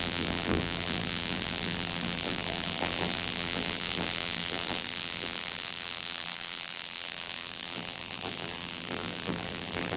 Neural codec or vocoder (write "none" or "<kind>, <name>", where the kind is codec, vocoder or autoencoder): vocoder, BigVGAN v2